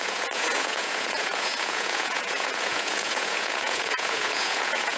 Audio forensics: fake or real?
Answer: fake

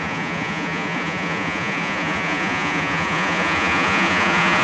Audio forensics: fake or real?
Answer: fake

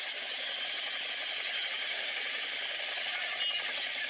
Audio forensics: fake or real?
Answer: real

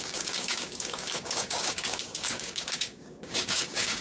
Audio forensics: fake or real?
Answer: fake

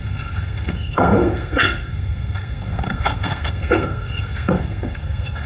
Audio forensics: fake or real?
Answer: fake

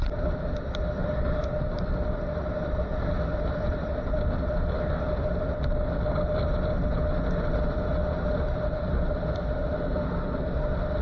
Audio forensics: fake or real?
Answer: real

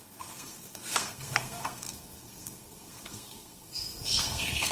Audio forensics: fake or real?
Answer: fake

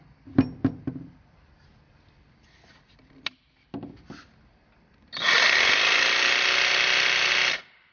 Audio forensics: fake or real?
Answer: real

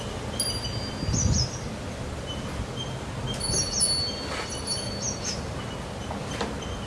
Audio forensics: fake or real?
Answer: real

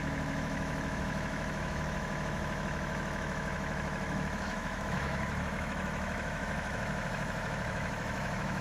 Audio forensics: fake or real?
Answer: fake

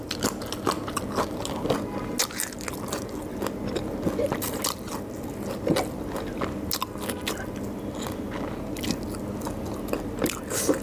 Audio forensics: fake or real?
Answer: real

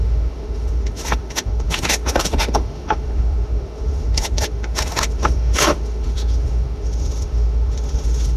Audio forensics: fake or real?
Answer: fake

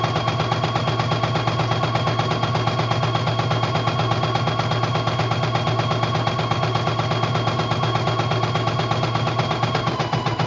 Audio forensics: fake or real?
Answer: real